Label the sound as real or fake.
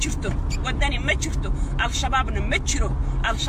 real